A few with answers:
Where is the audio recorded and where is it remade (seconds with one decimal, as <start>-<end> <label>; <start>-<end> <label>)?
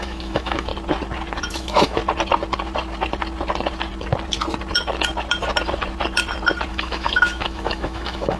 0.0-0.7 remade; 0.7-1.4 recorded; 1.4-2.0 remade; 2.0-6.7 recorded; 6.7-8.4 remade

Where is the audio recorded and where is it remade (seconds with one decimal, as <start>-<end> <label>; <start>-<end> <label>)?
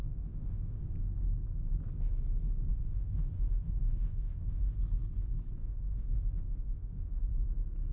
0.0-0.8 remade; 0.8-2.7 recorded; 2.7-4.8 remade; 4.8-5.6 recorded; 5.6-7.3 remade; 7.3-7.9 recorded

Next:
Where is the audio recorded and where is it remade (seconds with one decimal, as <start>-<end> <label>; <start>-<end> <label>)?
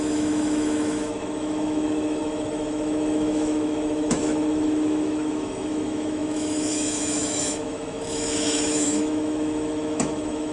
0.0-10.5 remade